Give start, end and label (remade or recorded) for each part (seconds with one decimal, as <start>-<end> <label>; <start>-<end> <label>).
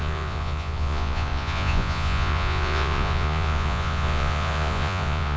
0.0-5.4 remade